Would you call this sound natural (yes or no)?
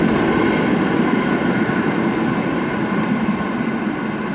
yes